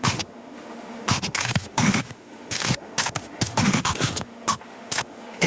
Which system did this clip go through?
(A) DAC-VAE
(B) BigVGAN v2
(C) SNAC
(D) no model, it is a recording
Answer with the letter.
A